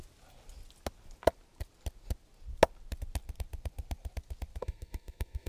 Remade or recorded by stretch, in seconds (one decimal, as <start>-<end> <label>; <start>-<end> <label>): 0.0-4.6 recorded; 4.6-5.5 remade

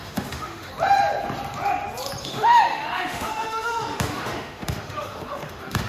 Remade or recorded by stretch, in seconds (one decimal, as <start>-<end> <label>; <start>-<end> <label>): 0.0-0.7 remade; 0.7-2.2 recorded; 2.2-5.9 remade